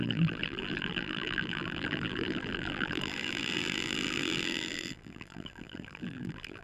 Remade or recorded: remade